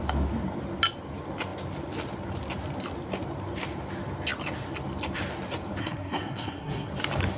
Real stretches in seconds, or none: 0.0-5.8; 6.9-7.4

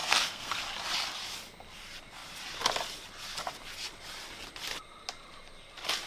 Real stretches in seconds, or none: 0.6-6.1

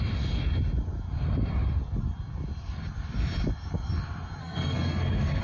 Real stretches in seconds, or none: 0.0-4.4

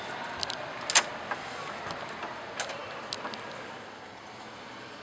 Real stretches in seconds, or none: 0.0-5.0

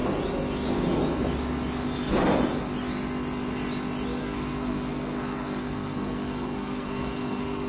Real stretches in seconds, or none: 0.0-4.2

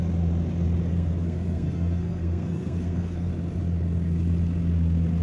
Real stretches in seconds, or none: 0.0-0.9; 3.3-5.2

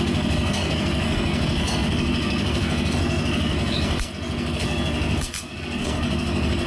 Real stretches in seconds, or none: none

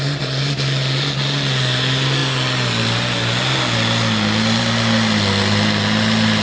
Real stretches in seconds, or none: 0.0-6.4